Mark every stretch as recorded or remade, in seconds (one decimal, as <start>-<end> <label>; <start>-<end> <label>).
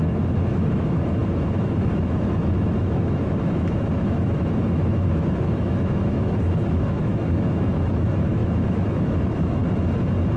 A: 0.0-9.6 remade; 9.6-10.4 recorded